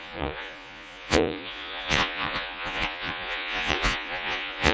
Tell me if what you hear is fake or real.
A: fake